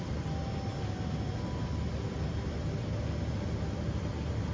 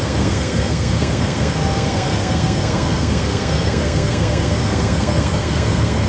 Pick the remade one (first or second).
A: second